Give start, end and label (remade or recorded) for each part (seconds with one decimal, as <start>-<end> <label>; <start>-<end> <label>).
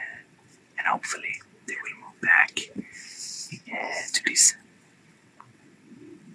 0.0-6.3 remade